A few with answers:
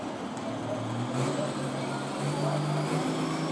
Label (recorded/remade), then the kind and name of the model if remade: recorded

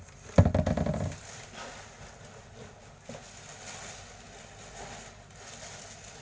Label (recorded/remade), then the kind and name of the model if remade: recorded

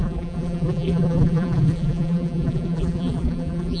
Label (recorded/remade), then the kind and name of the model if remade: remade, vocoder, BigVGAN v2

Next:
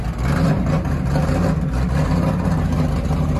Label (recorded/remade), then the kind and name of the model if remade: recorded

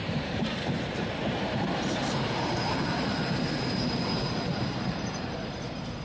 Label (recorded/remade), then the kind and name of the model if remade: remade, vocoder, BigVGAN v2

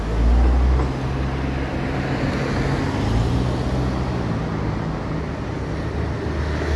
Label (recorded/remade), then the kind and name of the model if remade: recorded